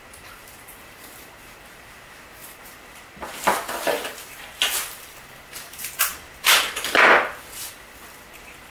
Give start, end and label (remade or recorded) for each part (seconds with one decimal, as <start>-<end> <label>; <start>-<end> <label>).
0.0-8.7 remade